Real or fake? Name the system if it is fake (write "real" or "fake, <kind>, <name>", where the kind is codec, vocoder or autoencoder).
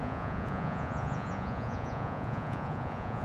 fake, vocoder, Vocos